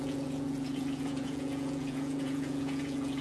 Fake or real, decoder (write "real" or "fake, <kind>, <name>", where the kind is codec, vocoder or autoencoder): fake, vocoder, Vocos